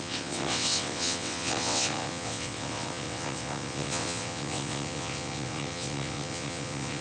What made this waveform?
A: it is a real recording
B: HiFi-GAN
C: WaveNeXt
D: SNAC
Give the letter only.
C